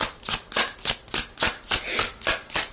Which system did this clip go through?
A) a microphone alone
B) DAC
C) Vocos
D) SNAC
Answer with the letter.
A